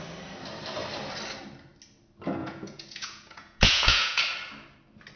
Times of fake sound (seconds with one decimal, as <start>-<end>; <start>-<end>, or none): 2.4-4.2